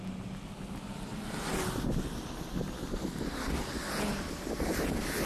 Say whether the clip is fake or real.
real